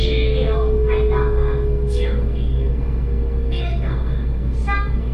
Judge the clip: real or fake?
fake